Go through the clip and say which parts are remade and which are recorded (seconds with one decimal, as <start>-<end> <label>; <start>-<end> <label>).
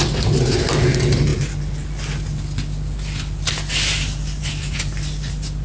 0.0-5.6 recorded